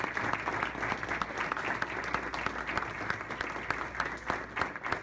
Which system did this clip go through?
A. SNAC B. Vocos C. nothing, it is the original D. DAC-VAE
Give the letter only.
C